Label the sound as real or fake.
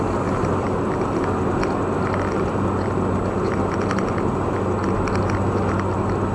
real